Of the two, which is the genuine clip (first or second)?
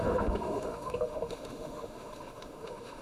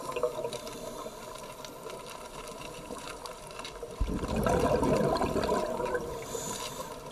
second